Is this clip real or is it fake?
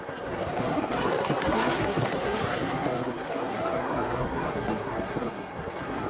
fake